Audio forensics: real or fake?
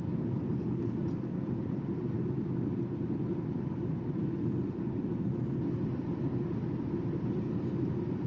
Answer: real